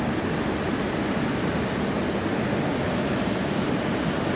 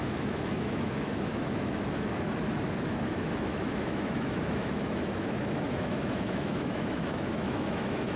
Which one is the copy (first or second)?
second